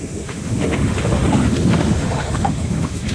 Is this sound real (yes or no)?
no